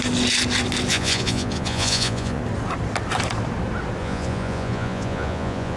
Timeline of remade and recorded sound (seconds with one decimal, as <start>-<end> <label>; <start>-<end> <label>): 0.0-0.9 recorded; 0.9-2.4 remade; 2.4-4.0 recorded; 4.0-5.8 remade